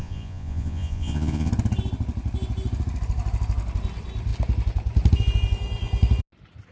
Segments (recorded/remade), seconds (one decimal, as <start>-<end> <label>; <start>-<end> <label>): 0.0-1.5 remade; 1.5-6.7 recorded